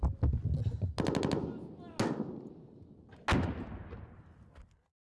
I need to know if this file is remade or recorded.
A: recorded